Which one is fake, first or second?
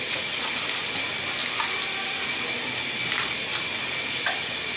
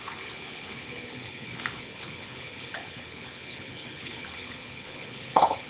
second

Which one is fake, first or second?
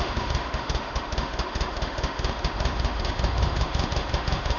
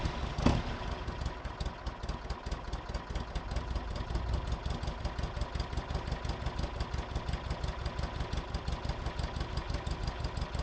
first